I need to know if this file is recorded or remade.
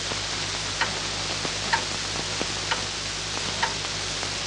recorded